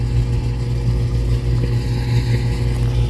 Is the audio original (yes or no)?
yes